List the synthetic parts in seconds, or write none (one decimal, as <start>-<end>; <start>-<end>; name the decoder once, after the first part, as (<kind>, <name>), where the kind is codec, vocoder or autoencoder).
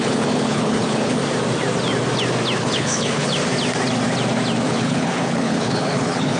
0.0-1.2 (codec, HILCodec); 2.6-3.3; 4.7-6.4